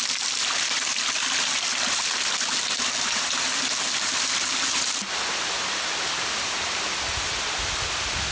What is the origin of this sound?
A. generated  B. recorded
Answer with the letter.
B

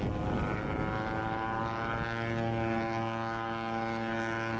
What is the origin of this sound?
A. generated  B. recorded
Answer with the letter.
B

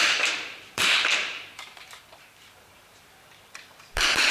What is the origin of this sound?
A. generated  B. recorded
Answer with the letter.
A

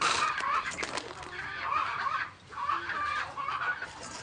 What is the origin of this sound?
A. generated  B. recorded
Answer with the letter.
A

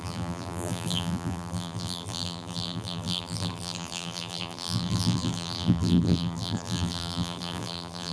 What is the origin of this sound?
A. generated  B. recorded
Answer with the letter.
A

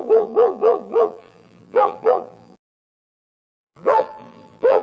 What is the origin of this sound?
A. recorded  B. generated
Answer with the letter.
B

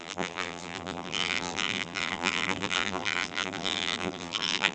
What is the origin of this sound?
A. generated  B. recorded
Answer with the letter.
A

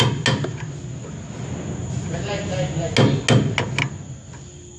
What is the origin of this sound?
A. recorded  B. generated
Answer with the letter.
A